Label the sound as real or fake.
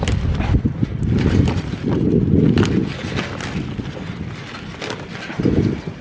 real